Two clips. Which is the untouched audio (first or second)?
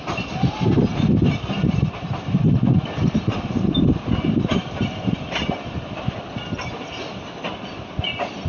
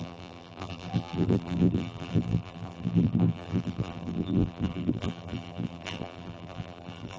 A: first